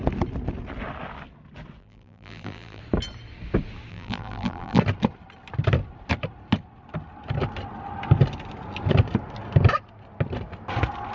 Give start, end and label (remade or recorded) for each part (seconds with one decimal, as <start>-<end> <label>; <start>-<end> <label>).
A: 0.0-1.8 recorded; 1.8-2.8 remade; 2.8-3.9 recorded; 3.9-4.8 remade; 4.8-11.1 recorded